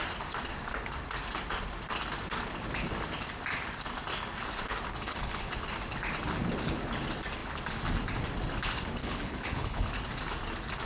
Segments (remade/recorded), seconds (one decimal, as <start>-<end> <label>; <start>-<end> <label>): 0.0-4.9 recorded; 4.9-5.5 remade; 5.5-9.0 recorded; 9.0-9.9 remade; 9.9-10.8 recorded

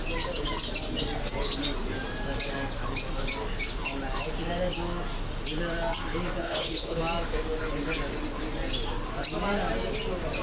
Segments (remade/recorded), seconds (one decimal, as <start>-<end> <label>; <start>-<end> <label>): 0.0-6.4 recorded; 6.4-7.0 remade; 7.0-10.4 recorded